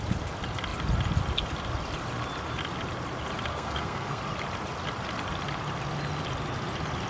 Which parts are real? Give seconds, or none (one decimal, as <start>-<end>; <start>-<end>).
0.0-3.5; 4.2-7.1

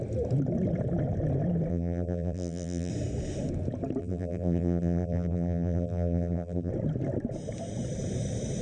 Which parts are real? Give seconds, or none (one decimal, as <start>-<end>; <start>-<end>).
0.0-1.7; 2.9-4.0; 6.7-8.6

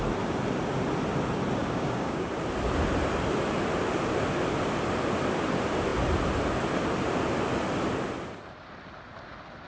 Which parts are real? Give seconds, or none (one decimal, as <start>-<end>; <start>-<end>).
0.0-1.6; 2.3-9.7

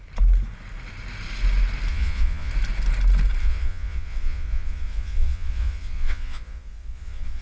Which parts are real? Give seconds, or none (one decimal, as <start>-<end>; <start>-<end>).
0.0-1.9; 2.5-3.4